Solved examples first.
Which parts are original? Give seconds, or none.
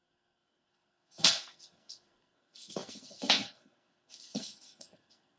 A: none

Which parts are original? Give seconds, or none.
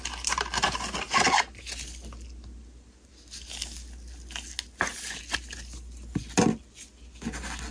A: 0.0-7.7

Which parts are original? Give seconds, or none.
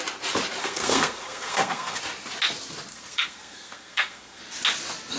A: 0.0-0.6; 2.0-2.9; 4.4-5.2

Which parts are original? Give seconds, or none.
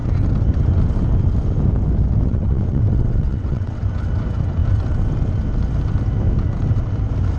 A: 0.0-2.3; 3.8-7.4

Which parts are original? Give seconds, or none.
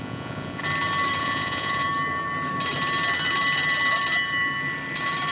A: 0.6-1.2; 1.8-5.3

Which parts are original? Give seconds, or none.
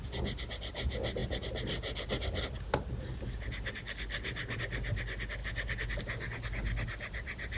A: 0.0-7.6